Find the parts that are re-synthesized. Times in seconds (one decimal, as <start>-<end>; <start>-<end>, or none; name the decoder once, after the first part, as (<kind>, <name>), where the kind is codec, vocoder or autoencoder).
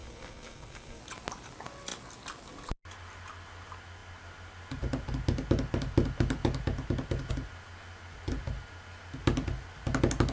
0.0-1.0 (codec, SNAC)